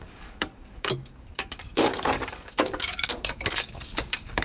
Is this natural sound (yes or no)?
no